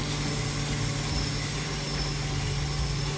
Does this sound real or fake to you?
real